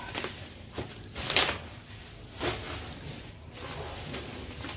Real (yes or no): yes